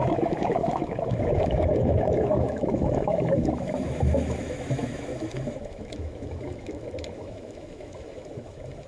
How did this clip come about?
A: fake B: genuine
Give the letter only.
A